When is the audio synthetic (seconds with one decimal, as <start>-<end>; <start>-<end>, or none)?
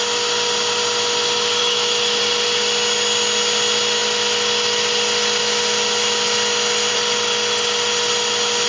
1.6-2.2